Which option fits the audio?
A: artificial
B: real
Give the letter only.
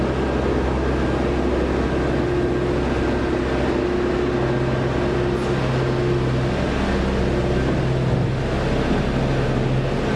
B